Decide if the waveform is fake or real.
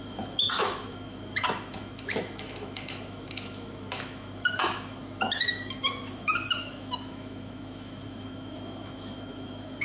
fake